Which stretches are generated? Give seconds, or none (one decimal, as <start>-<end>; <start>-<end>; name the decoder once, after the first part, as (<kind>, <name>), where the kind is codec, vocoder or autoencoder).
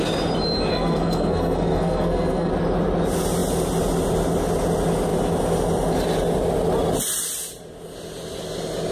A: 0.7-2.5 (codec, SNAC)